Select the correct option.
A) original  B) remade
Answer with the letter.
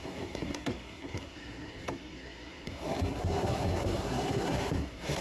B